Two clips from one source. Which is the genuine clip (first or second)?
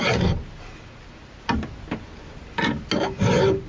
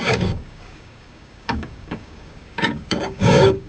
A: first